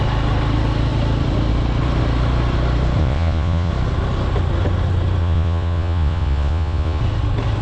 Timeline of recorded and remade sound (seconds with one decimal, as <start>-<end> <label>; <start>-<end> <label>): 0.0-3.0 recorded; 3.0-3.7 remade; 3.7-5.2 recorded; 5.2-7.0 remade; 7.0-7.6 recorded